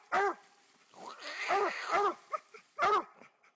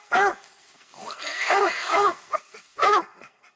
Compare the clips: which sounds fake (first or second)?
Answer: second